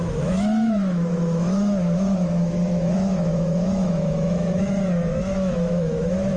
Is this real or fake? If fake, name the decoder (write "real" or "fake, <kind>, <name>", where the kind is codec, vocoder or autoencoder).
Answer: fake, autoencoder, DAC-VAE